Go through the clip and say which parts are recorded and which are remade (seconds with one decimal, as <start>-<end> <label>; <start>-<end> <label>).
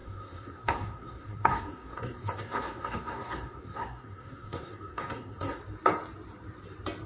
0.0-5.6 remade; 5.6-7.1 recorded